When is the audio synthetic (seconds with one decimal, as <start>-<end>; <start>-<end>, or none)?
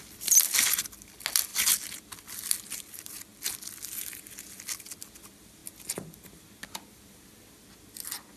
none